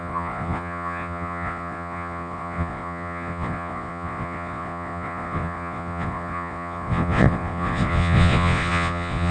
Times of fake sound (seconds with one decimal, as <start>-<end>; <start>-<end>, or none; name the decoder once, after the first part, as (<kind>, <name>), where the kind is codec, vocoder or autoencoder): 0.0-9.3 (vocoder, Vocos)